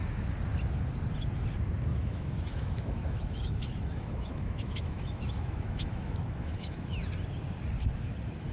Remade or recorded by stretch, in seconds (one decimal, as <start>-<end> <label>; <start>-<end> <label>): 0.0-1.9 recorded; 1.9-7.0 remade; 7.0-8.5 recorded